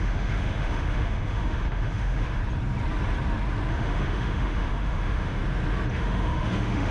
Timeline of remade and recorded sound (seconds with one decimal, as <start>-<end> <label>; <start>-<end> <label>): 0.0-2.4 remade; 2.4-3.7 recorded; 3.7-5.4 remade; 5.4-5.9 recorded; 5.9-6.9 remade